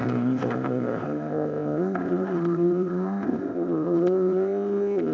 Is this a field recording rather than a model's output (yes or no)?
no